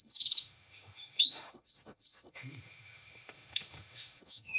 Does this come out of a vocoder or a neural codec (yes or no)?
yes